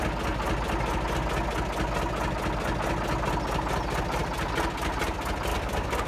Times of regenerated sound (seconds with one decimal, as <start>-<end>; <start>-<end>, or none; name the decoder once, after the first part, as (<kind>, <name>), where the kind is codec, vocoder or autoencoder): 5.5-6.1 (codec, DAC)